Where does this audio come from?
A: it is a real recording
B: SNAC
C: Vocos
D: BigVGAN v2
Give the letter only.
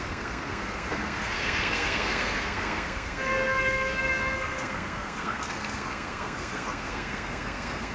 B